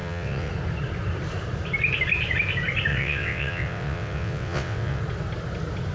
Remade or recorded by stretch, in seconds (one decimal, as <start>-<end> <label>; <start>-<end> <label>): 0.0-0.5 remade; 0.5-2.9 recorded; 2.9-5.0 remade; 5.0-5.9 recorded